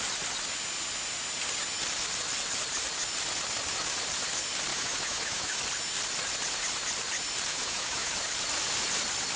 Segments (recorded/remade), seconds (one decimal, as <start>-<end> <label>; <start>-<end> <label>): 0.0-4.7 recorded; 4.7-5.6 remade; 5.6-7.5 recorded; 7.5-8.1 remade; 8.1-9.4 recorded